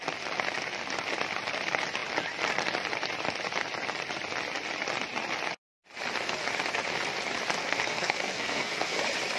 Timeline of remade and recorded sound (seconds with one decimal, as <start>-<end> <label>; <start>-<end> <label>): 0.0-7.6 recorded; 7.6-9.0 remade; 9.0-9.4 recorded